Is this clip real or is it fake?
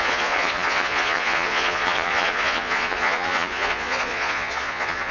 fake